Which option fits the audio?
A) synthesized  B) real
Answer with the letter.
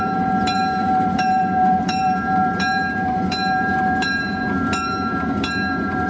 A